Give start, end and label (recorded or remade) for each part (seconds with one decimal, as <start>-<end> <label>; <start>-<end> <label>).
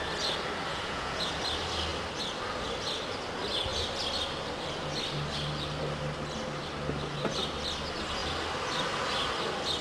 0.0-0.7 recorded; 0.7-1.3 remade; 1.3-9.8 recorded